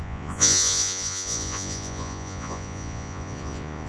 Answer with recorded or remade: remade